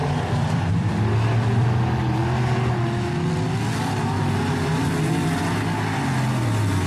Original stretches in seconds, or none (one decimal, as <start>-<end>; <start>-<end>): 0.9-6.9